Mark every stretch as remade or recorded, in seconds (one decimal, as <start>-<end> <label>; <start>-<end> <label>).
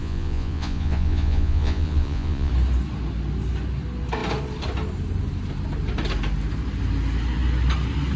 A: 0.0-2.5 remade; 2.5-8.2 recorded